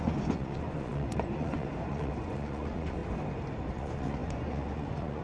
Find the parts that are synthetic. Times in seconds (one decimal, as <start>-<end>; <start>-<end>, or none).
0.0-3.0; 3.7-5.2